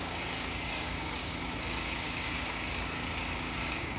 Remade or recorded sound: remade